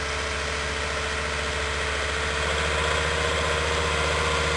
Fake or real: real